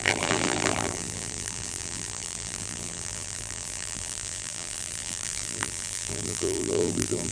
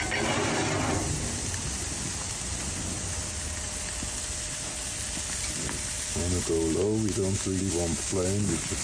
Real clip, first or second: second